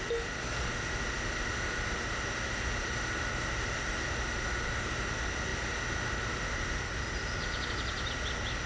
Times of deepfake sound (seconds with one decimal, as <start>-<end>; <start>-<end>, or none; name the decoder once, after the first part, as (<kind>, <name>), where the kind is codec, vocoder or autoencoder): none